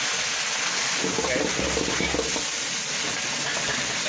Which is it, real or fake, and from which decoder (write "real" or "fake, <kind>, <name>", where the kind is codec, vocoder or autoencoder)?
real